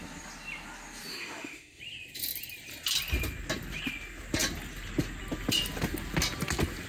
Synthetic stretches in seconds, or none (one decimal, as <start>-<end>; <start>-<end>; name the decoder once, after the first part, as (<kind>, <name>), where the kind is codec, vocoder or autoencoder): 1.1-1.8 (autoencoder, DAC-VAE)